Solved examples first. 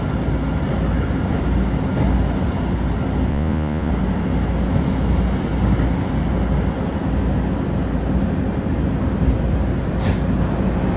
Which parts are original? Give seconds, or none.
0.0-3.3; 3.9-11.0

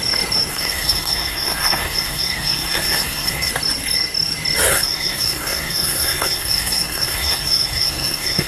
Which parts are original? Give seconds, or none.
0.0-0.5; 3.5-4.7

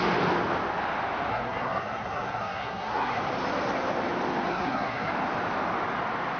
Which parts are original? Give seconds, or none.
0.0-1.3; 3.2-4.5; 5.1-6.4